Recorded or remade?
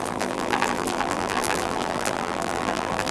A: remade